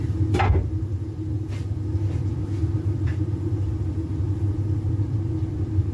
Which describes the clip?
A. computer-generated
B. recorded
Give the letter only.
B